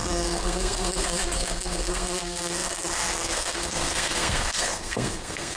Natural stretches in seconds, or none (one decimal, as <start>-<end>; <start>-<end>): none